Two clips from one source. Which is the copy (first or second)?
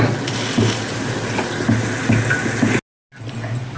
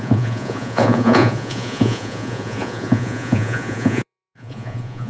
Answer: second